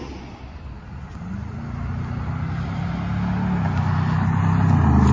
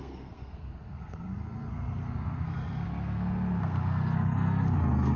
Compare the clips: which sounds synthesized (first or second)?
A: second